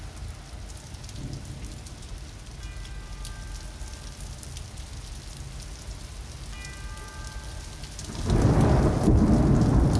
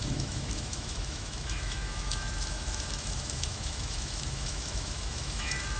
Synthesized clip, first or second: second